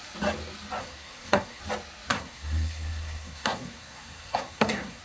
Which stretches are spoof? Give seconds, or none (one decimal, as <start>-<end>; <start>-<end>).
0.8-1.6; 2.1-5.0